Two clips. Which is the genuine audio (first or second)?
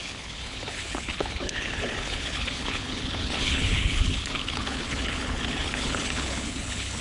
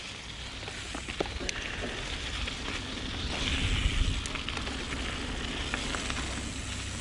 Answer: second